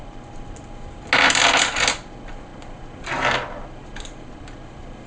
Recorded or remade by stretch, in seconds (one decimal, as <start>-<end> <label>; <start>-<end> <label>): 0.0-5.1 recorded